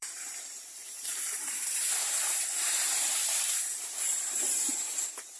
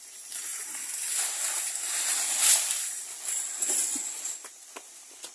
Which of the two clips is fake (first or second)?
first